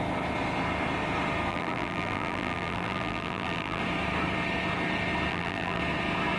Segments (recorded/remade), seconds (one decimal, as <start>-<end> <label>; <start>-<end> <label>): 0.0-1.5 recorded; 1.5-3.8 remade; 3.8-5.3 recorded; 5.3-5.8 remade; 5.8-6.4 recorded